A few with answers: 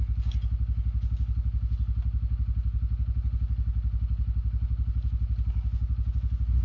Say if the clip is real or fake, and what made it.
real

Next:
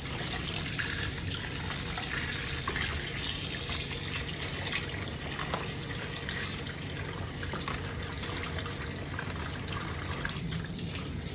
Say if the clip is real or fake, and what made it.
real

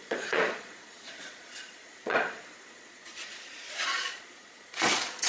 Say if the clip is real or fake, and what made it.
fake, vocoder, Vocos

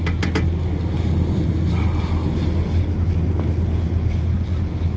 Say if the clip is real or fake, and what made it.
real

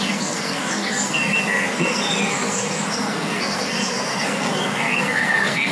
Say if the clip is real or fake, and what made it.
fake, codec, SNAC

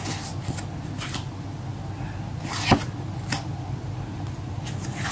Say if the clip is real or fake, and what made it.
real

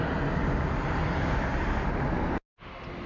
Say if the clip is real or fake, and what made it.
real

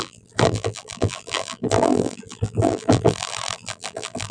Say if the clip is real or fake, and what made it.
fake, vocoder, BigVGAN v2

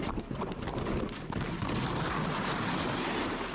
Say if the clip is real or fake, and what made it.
real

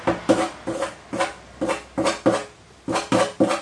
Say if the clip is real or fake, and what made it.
real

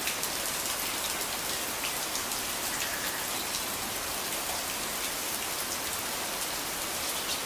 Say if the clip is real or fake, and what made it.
real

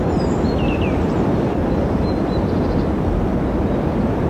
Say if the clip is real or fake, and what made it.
real